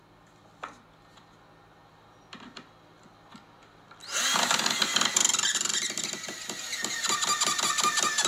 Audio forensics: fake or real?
real